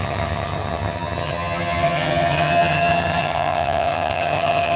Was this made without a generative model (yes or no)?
no